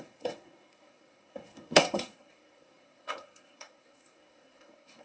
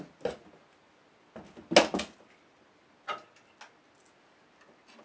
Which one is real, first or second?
second